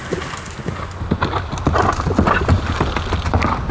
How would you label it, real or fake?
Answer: real